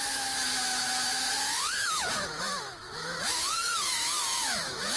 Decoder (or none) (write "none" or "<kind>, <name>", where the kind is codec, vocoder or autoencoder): autoencoder, DAC-VAE